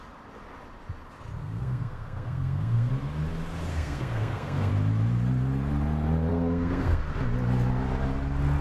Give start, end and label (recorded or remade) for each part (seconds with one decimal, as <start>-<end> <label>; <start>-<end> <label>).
0.0-1.4 recorded; 1.4-2.9 remade; 2.9-3.7 recorded; 3.7-4.7 remade; 4.7-6.3 recorded; 6.3-7.0 remade; 7.0-8.6 recorded